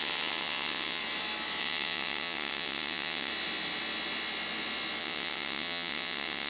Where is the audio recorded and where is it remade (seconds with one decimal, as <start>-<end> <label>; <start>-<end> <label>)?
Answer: 0.0-1.0 remade; 1.0-1.6 recorded; 1.6-3.3 remade; 3.3-5.0 recorded; 5.0-6.5 remade